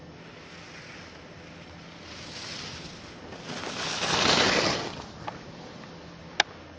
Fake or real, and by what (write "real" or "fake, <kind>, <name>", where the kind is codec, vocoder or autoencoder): real